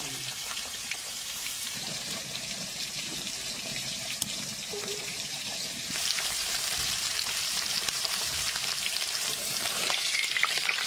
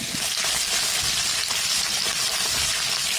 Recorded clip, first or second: second